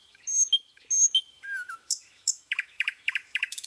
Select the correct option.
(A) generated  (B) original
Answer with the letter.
A